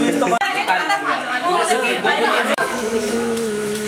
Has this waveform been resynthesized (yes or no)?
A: yes